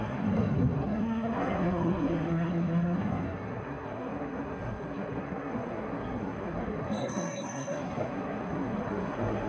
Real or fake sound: fake